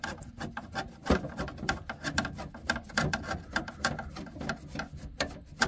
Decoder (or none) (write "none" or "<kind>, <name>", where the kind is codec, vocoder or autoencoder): none